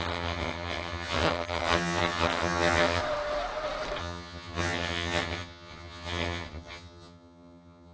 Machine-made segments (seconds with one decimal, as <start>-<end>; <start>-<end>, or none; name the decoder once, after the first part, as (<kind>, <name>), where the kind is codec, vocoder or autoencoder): 0.0-3.0 (vocoder, HiFi-GAN); 4.0-7.9